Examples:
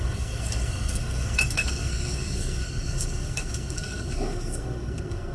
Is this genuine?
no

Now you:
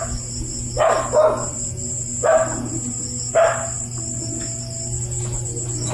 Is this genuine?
yes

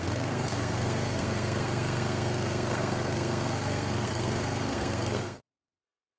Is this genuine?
no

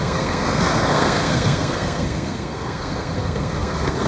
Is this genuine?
no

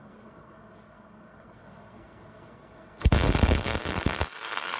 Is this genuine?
no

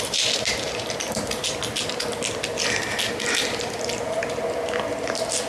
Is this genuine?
yes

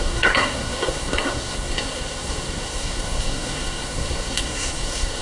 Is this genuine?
no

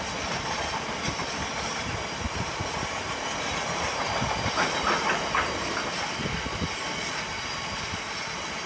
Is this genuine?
yes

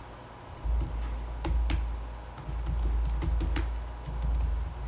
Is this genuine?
yes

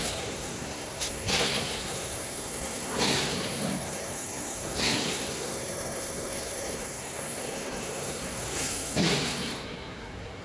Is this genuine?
no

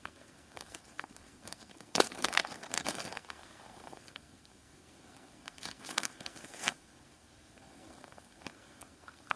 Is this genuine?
no